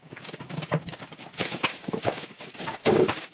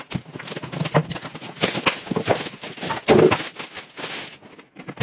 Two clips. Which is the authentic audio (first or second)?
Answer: second